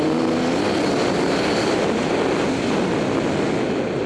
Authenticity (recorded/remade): recorded